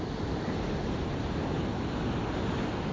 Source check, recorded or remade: recorded